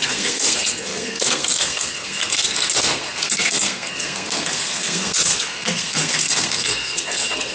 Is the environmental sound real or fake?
fake